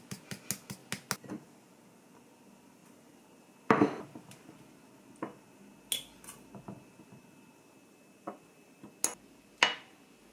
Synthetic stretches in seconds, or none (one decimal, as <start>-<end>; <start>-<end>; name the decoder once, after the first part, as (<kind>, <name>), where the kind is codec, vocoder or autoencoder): none